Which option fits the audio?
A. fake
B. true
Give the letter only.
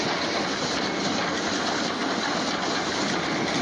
B